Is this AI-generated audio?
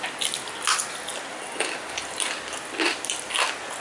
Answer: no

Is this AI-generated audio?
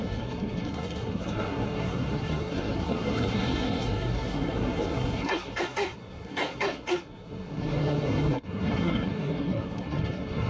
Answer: yes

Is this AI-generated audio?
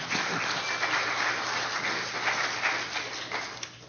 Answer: no